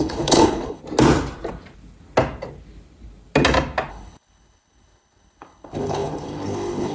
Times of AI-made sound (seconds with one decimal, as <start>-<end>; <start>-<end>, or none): 0.0-0.8; 3.9-6.9